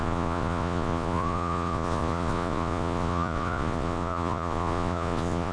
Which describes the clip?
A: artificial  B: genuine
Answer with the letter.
A